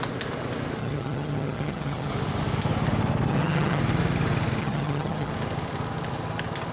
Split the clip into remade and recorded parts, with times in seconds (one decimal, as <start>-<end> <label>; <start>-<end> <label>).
0.0-0.8 recorded; 0.8-2.1 remade; 2.1-3.3 recorded; 3.3-3.8 remade; 3.8-4.6 recorded; 4.6-5.3 remade; 5.3-6.7 recorded